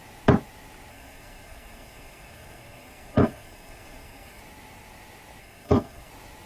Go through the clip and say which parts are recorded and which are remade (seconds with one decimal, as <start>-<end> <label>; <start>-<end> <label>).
0.0-0.9 recorded; 0.9-4.4 remade; 4.4-5.4 recorded; 5.4-6.1 remade; 6.1-6.5 recorded